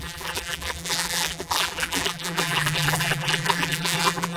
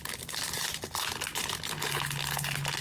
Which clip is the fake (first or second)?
first